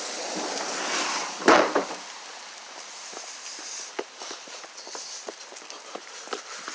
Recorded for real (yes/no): no